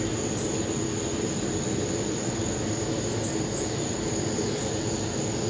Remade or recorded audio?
recorded